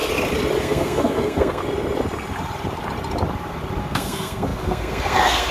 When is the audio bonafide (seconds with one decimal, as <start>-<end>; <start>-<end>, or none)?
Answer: 0.0-0.6; 1.6-3.8